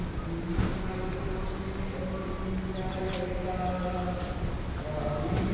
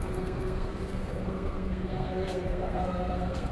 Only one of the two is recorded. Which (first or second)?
first